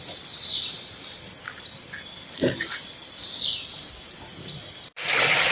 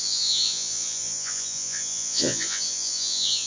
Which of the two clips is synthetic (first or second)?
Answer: second